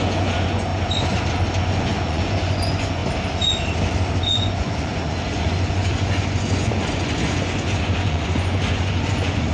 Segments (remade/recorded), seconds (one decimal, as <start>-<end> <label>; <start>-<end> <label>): 0.0-0.7 remade; 0.7-1.6 recorded; 1.6-3.0 remade; 3.0-4.2 recorded; 4.2-9.5 remade